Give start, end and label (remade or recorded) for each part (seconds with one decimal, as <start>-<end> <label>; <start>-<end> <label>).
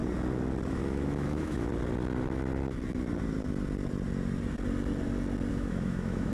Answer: 0.0-0.7 recorded; 0.7-1.7 remade; 1.7-5.5 recorded; 5.5-6.3 remade